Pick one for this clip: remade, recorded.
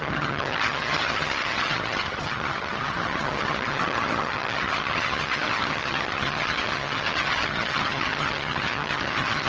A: remade